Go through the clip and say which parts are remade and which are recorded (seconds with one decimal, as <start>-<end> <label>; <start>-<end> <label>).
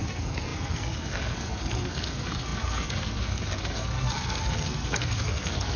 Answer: 0.0-5.8 remade